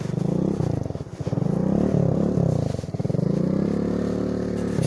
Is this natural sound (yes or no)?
yes